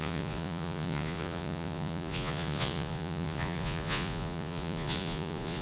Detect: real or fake fake